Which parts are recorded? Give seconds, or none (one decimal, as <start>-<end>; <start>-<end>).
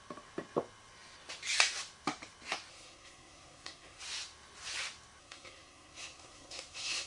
0.0-2.7; 4.0-5.2